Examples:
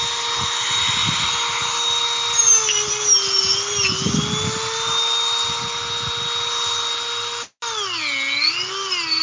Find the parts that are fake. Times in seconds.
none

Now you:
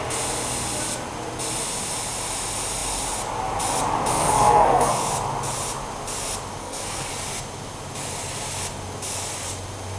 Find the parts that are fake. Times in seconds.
4.1-5.0 (codec, SNAC); 6.6-7.1

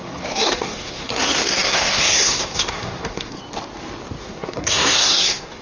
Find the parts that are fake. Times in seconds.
0.0-3.4 (codec, SNAC); 4.2-5.6

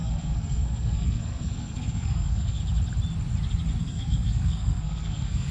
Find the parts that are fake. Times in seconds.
0.0-2.6 (codec, SNAC); 3.8-5.5

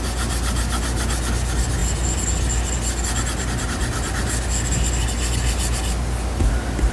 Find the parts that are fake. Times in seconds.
none

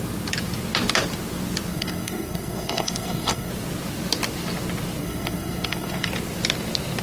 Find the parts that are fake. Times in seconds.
1.7-3.5 (codec, SNAC); 5.0-6.1

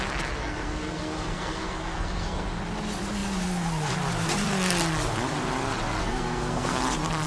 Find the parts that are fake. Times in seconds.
0.4-2.6 (codec, SNAC); 6.0-6.8

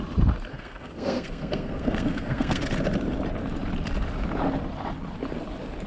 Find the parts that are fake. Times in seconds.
0.5-2.6 (codec, SNAC)